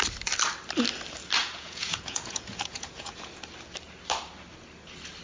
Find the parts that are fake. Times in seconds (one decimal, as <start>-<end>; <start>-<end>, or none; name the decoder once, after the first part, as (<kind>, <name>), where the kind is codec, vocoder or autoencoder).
1.4-3.3 (vocoder, Vocos)